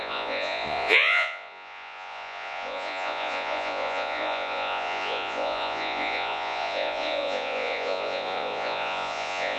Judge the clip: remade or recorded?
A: remade